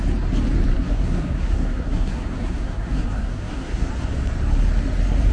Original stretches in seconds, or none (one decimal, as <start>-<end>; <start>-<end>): 0.0-0.7; 3.9-5.3

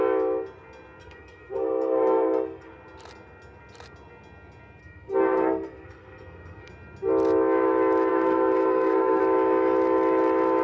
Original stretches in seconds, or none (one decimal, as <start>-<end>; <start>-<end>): 0.0-1.0; 2.7-4.8; 6.7-8.1; 9.2-10.6

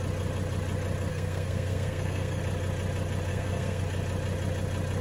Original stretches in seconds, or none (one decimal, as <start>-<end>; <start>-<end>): 0.0-1.1; 2.4-3.3; 3.8-5.0

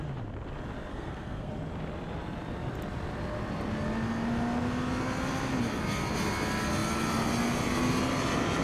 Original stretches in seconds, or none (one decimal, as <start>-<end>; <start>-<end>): 0.0-0.9; 1.5-8.6

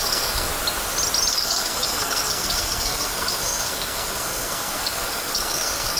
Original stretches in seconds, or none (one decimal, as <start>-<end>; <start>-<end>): 0.5-1.3

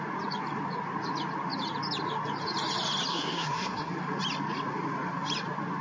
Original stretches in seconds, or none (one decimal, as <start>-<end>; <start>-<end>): 0.0-3.1; 3.9-5.8

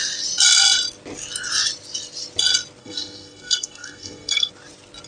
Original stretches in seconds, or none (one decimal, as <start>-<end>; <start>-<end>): 0.0-2.8; 4.5-5.1